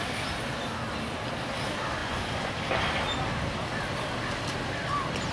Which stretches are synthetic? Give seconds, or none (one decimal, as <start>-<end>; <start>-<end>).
2.0-2.5